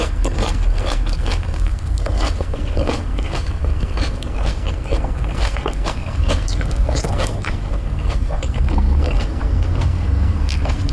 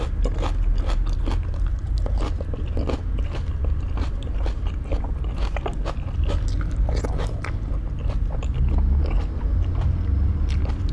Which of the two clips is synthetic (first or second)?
first